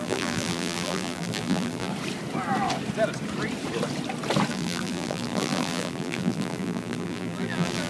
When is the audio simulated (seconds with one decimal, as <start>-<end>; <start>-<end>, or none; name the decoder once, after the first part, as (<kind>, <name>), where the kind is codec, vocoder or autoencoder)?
0.0-1.9 (vocoder, BigVGAN v2); 4.5-7.9